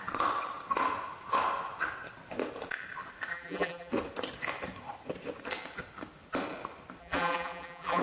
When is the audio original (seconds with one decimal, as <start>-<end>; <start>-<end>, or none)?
0.0-3.3; 3.9-7.0

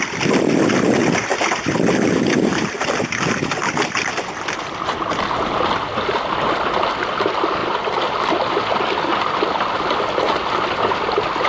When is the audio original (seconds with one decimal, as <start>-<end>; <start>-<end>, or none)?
none

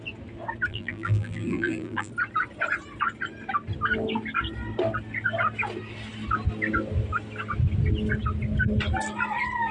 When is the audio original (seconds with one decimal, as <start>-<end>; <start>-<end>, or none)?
0.0-0.7; 2.1-9.7